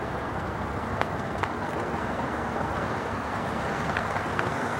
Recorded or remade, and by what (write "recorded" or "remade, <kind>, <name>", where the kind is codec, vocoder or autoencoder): remade, codec, SNAC